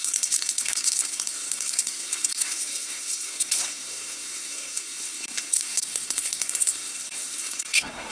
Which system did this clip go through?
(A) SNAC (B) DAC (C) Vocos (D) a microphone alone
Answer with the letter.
A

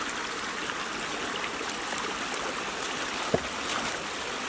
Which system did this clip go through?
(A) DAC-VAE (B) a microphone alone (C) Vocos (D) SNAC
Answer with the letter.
B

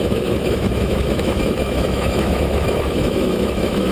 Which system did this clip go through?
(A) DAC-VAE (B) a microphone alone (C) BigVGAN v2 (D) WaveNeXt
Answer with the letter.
A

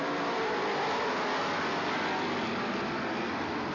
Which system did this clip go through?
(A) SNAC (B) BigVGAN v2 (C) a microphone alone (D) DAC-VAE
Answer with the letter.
C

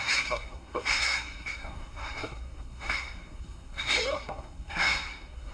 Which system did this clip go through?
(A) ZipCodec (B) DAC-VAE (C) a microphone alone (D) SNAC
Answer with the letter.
D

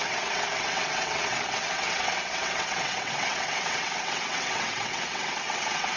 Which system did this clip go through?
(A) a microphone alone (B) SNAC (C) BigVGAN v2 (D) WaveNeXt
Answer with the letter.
D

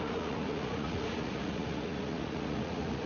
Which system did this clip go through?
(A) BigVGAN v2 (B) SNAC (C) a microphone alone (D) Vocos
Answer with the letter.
D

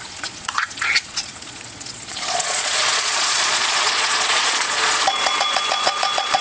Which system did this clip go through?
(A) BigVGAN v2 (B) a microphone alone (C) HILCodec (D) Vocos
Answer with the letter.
D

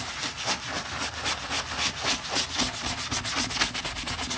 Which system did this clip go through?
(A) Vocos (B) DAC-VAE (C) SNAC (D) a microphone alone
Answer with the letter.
D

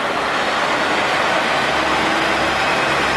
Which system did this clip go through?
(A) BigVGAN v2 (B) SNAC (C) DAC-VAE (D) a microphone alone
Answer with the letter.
D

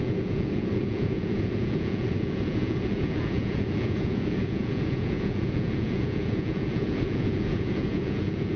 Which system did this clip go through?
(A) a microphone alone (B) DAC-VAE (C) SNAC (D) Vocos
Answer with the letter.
D